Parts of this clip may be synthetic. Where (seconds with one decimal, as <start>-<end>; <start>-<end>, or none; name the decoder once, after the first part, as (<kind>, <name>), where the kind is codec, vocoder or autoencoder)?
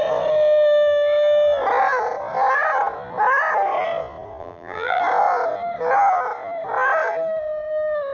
4.4-5.0 (vocoder, BigVGAN v2)